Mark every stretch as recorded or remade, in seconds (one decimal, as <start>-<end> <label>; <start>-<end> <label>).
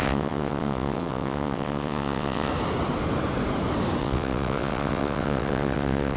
0.0-2.5 remade; 2.5-4.0 recorded; 4.0-6.2 remade